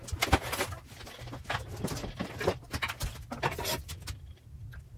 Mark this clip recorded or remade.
recorded